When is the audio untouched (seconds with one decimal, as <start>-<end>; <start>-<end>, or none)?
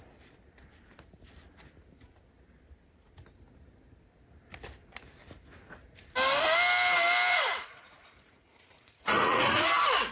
0.0-7.3; 9.7-10.1